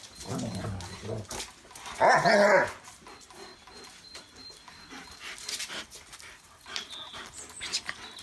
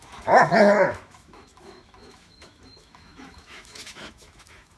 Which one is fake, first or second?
second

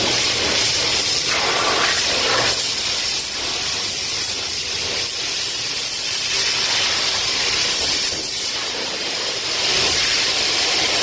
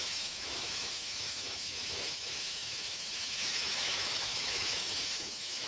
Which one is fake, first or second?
second